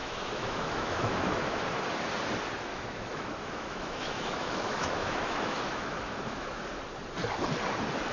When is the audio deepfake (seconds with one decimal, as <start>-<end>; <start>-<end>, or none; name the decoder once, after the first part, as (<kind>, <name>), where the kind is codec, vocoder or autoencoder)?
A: 0.0-1.6 (autoencoder, DAC-VAE); 2.7-6.6